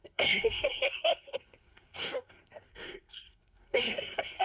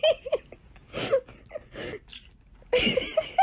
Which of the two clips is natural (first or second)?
second